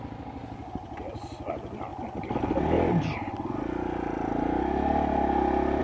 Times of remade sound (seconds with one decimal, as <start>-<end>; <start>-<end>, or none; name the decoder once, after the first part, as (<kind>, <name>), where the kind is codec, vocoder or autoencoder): none